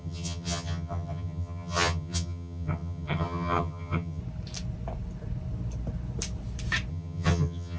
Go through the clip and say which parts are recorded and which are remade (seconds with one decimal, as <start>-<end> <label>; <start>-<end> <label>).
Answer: 0.0-4.2 remade; 4.2-6.9 recorded; 6.9-7.8 remade